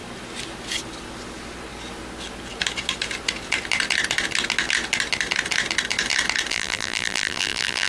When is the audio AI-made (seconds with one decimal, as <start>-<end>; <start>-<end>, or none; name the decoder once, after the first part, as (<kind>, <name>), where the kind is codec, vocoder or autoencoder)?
6.5-7.9 (vocoder, BigVGAN v2)